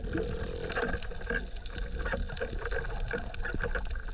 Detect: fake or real real